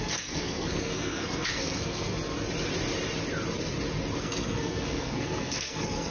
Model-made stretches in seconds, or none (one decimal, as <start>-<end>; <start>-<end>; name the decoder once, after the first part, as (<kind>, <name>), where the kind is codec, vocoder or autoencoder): 0.0-2.1 (codec, SNAC); 4.2-6.1